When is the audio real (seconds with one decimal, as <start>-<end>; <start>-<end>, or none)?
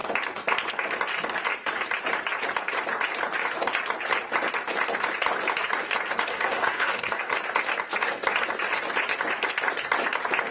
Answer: 0.0-6.3; 7.3-10.5